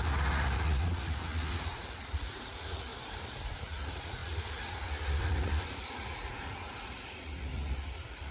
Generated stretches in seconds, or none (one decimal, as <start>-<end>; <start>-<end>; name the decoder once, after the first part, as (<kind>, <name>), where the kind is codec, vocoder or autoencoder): 0.0-2.9 (vocoder, Vocos); 3.6-8.3